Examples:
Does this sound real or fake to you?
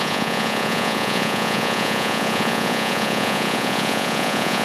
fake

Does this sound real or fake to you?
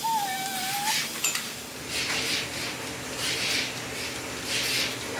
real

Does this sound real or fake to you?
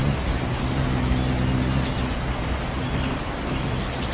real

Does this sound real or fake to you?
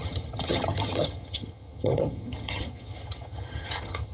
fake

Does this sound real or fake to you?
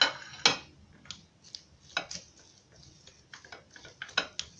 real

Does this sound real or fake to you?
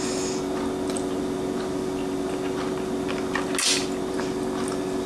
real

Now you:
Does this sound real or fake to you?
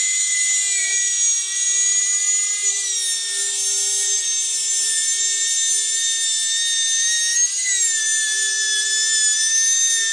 real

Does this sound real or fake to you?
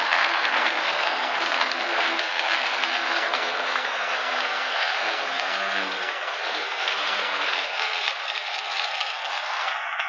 fake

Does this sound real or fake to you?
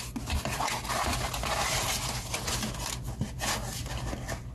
real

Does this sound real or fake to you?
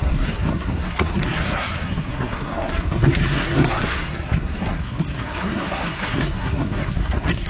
fake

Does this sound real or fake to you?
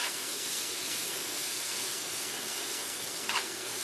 fake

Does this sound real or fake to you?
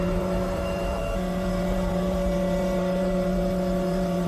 fake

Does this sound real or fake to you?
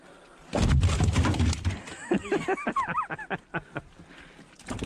real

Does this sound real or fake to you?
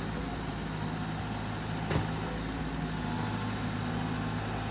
real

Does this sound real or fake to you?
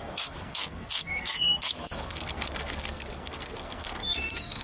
fake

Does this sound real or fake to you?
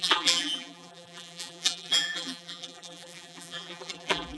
fake